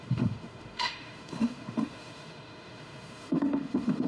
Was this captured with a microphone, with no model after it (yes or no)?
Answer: no